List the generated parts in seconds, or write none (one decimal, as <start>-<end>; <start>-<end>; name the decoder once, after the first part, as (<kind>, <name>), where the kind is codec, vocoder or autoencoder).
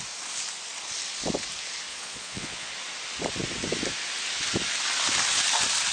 1.9-2.7 (vocoder, Vocos)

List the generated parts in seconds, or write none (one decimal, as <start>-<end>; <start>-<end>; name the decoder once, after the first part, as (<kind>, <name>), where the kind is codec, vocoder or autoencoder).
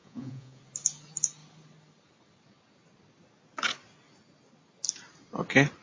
0.0-0.6 (vocoder, Vocos)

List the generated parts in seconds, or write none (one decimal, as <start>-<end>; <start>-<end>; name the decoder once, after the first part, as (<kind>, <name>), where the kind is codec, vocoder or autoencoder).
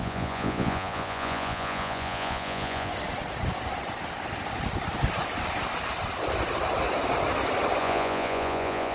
0.0-2.9 (vocoder, Vocos); 7.8-8.9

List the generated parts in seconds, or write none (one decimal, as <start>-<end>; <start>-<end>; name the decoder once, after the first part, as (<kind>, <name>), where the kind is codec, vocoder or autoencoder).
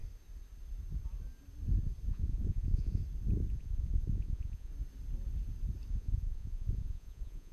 2.1-3.0 (vocoder, Vocos); 3.5-4.7; 5.9-7.5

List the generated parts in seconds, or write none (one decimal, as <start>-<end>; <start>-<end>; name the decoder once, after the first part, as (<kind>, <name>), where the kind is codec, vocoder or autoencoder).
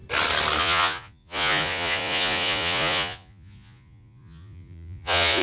0.6-5.4 (vocoder, Vocos)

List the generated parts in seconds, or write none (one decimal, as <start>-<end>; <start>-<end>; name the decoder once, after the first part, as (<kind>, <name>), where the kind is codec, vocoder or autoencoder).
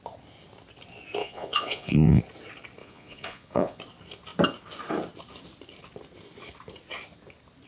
1.2-2.2 (vocoder, Vocos); 2.8-3.8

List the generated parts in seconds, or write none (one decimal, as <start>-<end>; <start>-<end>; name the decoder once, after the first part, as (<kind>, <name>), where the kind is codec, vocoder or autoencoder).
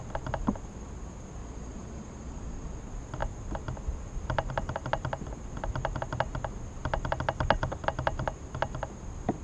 1.4-2.8 (vocoder, Vocos)